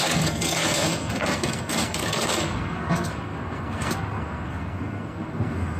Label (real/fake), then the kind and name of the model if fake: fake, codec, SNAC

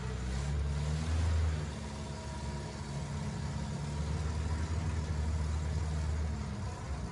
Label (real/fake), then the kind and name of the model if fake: real